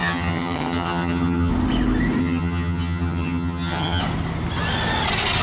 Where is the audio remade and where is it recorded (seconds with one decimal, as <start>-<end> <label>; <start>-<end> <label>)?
0.0-1.5 remade; 1.5-2.2 recorded; 2.2-4.0 remade; 4.0-5.4 recorded